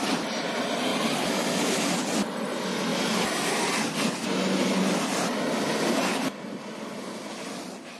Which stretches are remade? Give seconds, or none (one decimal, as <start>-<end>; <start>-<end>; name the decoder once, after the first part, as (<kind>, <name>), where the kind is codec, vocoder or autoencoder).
none